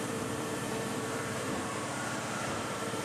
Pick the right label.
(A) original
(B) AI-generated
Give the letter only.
B